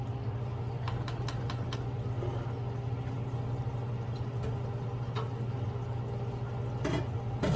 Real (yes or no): yes